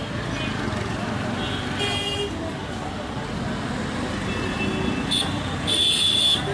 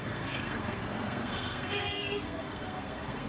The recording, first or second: first